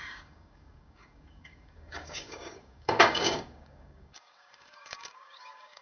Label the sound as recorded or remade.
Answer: remade